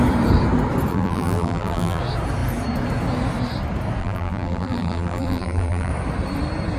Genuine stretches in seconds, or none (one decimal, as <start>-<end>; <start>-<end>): 0.0-0.9; 2.0-4.0; 5.9-6.8